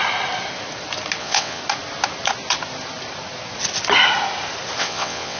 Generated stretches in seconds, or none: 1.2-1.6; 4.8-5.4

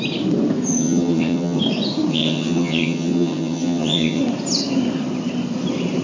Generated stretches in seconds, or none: 0.8-1.6; 2.1-4.2

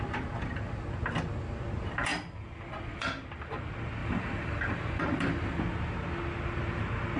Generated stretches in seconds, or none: 2.1-3.6; 4.0-5.6

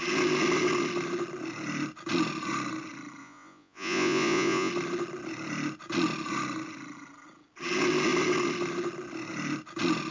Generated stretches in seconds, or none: 3.2-4.7

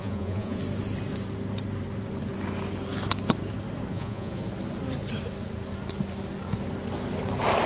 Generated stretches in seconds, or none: 0.0-0.6; 3.9-4.4

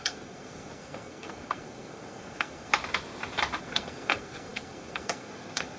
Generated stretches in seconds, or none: 0.0-2.7; 3.6-5.8

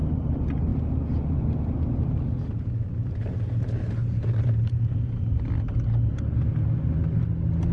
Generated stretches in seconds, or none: none